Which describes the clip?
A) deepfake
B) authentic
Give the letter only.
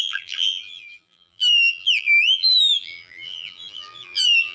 A